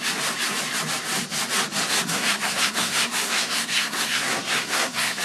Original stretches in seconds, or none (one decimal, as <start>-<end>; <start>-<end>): 0.0-1.8